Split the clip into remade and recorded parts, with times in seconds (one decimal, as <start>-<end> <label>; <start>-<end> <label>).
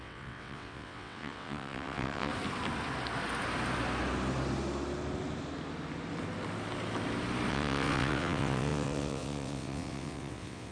0.0-2.3 remade; 2.3-7.5 recorded; 7.5-10.7 remade